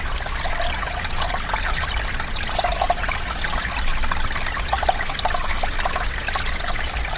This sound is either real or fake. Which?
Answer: real